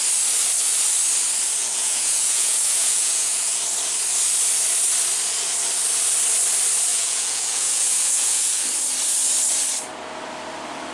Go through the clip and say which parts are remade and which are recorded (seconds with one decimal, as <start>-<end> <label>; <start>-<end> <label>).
0.0-1.6 recorded; 1.6-3.6 remade; 3.6-6.9 recorded; 6.9-8.6 remade; 8.6-10.9 recorded